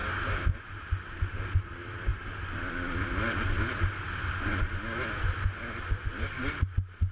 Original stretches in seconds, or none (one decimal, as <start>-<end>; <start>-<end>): 0.0-7.1